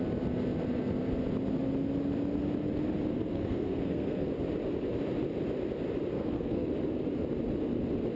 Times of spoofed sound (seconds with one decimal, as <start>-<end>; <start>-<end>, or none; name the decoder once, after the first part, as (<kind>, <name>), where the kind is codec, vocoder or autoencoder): 3.1-4.3 (codec, SNAC); 6.1-6.7